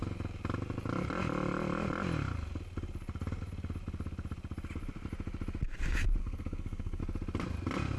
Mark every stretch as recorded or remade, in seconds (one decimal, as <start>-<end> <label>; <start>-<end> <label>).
0.0-6.2 recorded; 6.2-7.0 remade; 7.0-8.0 recorded